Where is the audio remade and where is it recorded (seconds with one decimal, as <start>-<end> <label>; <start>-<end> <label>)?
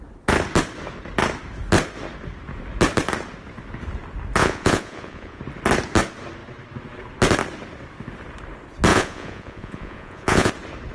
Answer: 0.0-4.4 recorded; 4.4-5.4 remade; 5.4-8.9 recorded; 8.9-10.5 remade; 10.5-10.9 recorded